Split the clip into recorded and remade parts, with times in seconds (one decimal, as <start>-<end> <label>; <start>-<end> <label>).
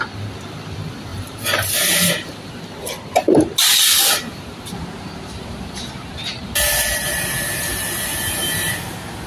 0.0-1.1 recorded; 1.1-2.5 remade; 2.5-4.3 recorded; 4.3-9.3 remade